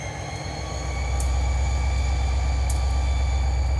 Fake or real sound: real